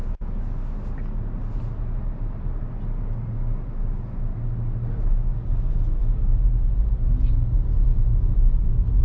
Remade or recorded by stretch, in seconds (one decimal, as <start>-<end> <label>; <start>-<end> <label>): 0.0-9.0 recorded